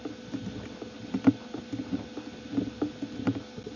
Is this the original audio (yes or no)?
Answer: yes